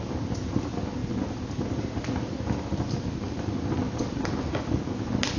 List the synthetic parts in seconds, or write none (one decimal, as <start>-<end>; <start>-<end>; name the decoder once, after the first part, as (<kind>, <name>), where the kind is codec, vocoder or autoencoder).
none